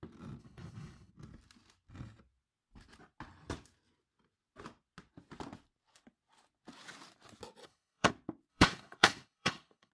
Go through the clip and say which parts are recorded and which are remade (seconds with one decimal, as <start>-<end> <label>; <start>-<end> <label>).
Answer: 0.0-0.4 recorded; 0.4-1.1 remade; 1.1-7.6 recorded; 7.6-8.1 remade; 8.1-8.5 recorded; 8.5-9.9 remade